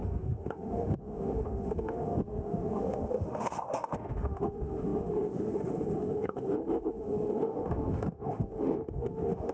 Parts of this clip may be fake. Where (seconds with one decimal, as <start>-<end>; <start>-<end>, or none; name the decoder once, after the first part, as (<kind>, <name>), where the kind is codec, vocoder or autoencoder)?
0.0-9.5 (autoencoder, DAC-VAE)